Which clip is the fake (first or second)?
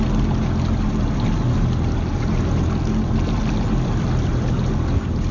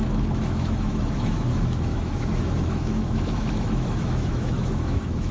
second